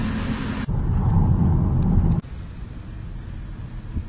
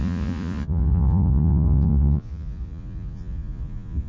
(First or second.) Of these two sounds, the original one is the first